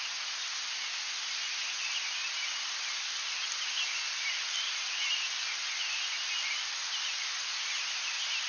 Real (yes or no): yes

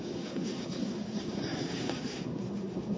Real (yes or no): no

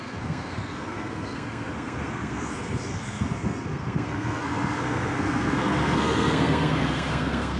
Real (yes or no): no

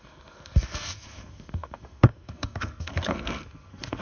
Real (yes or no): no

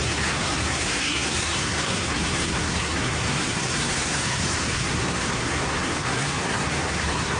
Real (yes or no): no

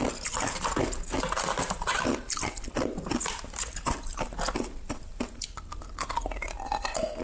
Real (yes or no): yes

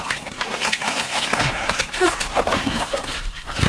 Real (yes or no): no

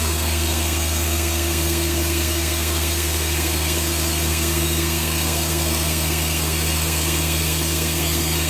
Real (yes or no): no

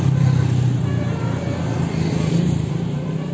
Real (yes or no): yes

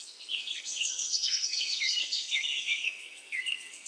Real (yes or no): no